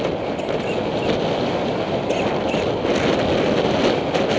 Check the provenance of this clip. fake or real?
real